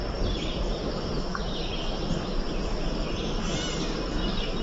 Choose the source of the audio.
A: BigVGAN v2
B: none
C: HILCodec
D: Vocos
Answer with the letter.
B